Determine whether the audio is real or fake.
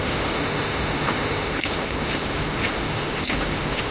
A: fake